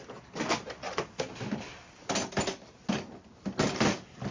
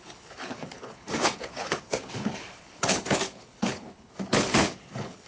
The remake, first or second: second